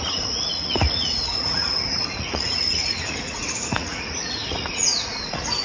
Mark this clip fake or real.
fake